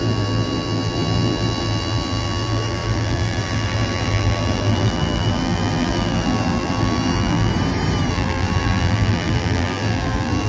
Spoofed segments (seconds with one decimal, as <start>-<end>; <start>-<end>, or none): 0.0-7.5; 8.1-10.5